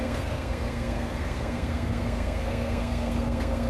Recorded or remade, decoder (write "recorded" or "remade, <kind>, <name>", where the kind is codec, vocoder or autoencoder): remade, codec, SNAC